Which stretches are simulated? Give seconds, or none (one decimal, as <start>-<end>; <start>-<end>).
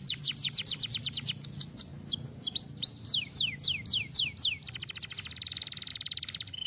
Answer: 0.0-1.9; 5.9-6.7